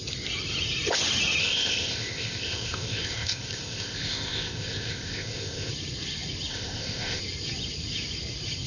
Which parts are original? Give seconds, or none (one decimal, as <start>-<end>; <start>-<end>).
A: 0.0-1.4; 5.7-6.5; 7.2-8.7